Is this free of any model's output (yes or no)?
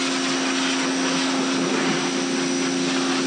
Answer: yes